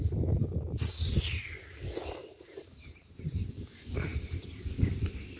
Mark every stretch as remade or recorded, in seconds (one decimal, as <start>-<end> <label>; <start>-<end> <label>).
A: 0.0-2.2 recorded; 2.2-3.4 remade; 3.4-5.4 recorded